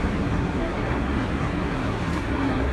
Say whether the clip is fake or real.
fake